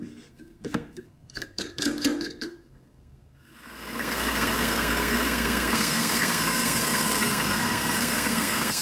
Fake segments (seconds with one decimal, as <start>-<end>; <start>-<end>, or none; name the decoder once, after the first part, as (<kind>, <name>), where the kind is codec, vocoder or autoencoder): 0.0-8.8 (codec, SNAC)

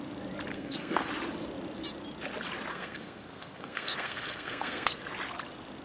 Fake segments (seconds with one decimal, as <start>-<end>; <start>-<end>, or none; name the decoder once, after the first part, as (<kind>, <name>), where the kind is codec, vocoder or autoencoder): 0.5-1.1 (codec, SNAC); 2.7-5.0

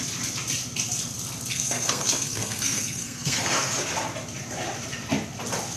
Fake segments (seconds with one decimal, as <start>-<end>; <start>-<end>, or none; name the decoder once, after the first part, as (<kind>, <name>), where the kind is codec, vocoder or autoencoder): 1.5-3.8 (codec, SNAC)

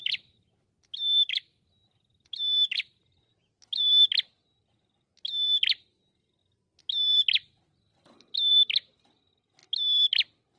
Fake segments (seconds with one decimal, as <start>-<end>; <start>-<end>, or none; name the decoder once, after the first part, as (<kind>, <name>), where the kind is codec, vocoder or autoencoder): none

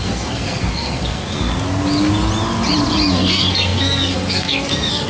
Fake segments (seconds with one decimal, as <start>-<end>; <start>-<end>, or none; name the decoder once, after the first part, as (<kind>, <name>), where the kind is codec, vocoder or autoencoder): 0.0-1.5 (codec, SNAC); 3.1-5.1

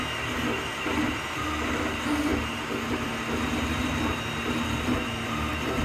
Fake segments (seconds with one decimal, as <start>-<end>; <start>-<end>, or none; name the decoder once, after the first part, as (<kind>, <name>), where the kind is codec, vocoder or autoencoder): none